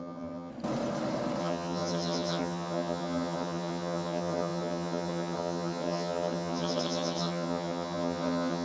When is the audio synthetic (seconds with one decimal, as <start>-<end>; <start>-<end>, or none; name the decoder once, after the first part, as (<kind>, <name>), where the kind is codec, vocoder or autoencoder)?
0.0-0.5 (vocoder, HiFi-GAN); 1.4-8.6